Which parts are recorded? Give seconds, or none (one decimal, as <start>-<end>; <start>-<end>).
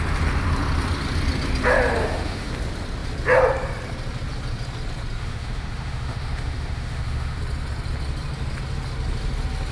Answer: 0.0-2.0; 2.5-5.2; 7.4-9.7